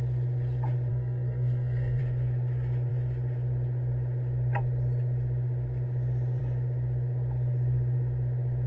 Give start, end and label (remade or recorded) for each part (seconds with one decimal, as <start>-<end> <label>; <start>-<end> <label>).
0.0-0.9 recorded; 0.9-2.0 remade; 2.0-8.7 recorded